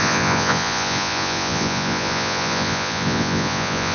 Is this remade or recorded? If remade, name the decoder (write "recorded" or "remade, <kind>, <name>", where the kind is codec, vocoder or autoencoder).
remade, vocoder, Vocos